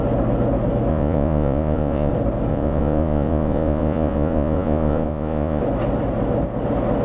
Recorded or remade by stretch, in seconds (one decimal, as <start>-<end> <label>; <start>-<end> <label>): 0.0-0.9 recorded; 0.9-2.1 remade; 2.1-2.5 recorded; 2.5-5.6 remade; 5.6-7.0 recorded